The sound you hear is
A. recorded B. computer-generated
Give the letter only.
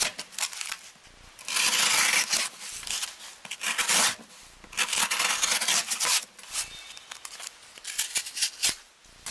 A